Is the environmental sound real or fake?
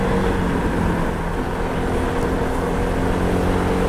real